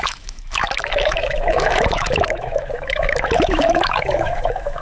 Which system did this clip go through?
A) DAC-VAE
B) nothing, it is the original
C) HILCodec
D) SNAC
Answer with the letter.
A